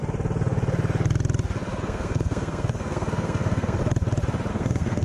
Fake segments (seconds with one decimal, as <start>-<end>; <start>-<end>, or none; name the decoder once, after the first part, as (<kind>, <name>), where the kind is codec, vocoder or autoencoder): 1.8-3.8 (codec, SNAC); 4.5-5.0